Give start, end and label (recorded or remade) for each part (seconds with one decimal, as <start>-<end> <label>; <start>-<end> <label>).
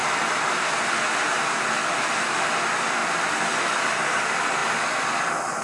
0.0-5.6 recorded